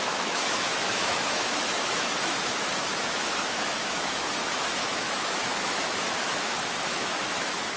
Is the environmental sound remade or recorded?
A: remade